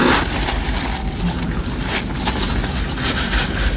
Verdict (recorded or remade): recorded